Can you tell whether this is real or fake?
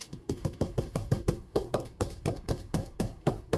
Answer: fake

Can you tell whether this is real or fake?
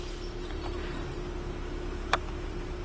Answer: real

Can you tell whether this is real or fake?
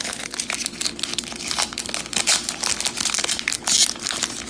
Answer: real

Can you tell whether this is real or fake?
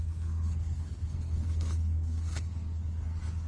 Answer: fake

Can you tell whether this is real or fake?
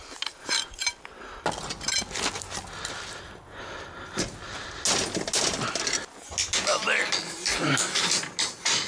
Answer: real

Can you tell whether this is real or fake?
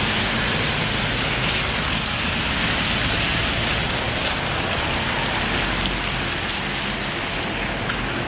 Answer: real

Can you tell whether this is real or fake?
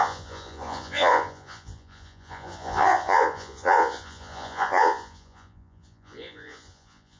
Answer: fake